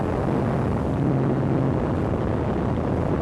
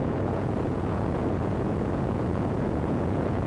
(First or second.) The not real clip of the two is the second